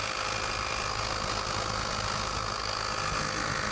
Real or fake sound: real